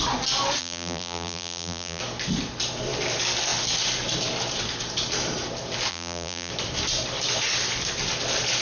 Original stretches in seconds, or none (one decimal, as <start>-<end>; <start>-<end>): 0.0-0.6; 2.0-5.9; 6.5-8.6